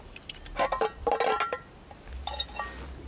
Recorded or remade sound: recorded